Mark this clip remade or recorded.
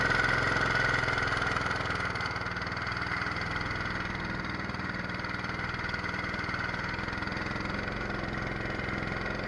recorded